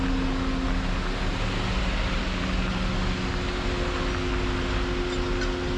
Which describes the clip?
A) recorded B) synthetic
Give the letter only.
A